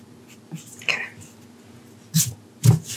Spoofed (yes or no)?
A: no